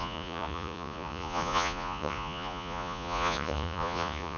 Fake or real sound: fake